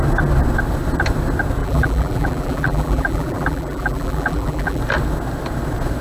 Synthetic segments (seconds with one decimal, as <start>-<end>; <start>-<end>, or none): 1.6-4.8